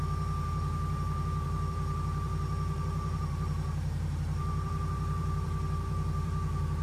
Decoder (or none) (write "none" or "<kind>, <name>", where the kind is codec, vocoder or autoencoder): vocoder, BigVGAN v2